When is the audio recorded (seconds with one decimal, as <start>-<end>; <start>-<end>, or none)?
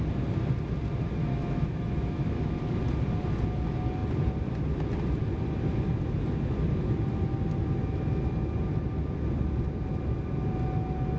0.0-1.3; 2.6-11.2